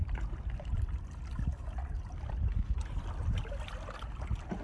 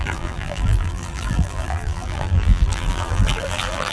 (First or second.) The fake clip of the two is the second